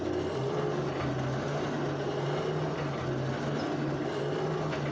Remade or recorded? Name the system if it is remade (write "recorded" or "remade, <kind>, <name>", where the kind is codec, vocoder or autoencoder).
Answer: recorded